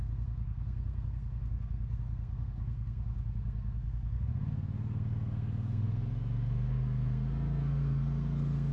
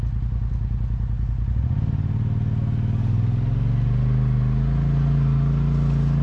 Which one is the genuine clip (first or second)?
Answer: second